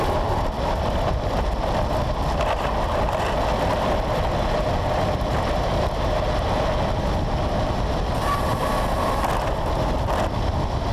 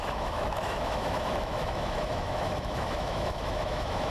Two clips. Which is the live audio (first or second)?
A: first